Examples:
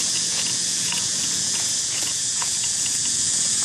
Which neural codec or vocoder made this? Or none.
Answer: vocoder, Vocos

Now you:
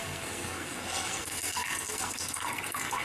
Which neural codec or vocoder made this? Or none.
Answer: codec, SNAC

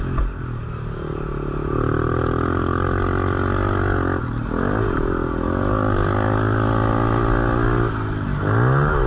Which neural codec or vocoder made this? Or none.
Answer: none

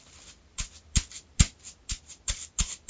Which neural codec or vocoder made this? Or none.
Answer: none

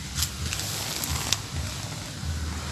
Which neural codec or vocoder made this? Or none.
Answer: none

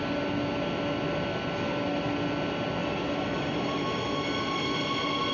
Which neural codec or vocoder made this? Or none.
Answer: none